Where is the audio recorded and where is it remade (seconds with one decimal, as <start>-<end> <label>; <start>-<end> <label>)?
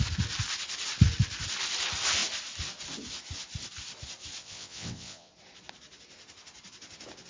0.0-4.4 recorded; 4.4-5.3 remade; 5.3-7.3 recorded